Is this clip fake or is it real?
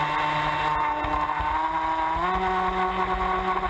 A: real